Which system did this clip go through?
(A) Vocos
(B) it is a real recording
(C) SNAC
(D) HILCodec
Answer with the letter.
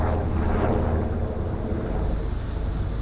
B